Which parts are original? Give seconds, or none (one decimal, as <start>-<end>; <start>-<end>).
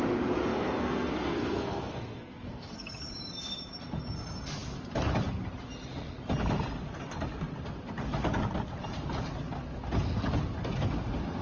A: 0.0-0.5; 3.0-11.4